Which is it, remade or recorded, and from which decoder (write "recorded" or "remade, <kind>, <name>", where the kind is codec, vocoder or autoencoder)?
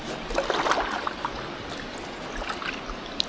recorded